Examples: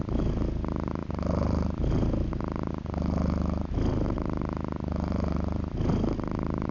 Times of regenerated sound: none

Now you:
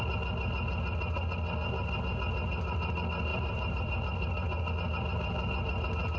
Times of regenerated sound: 3.3-4.7 (vocoder, BigVGAN v2)

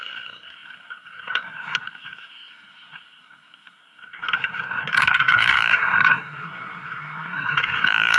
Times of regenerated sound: 0.0-8.2 (codec, SNAC)

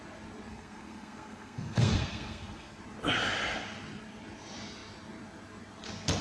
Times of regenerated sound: 0.5-2.8 (codec, SNAC)

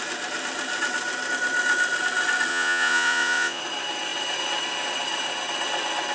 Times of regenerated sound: 2.5-3.6 (vocoder, Vocos)

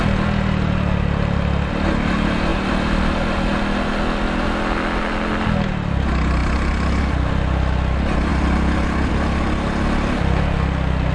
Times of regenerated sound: 2.5-3.6 (vocoder, BigVGAN v2); 8.3-9.1